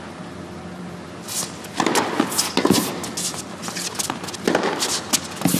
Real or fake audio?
real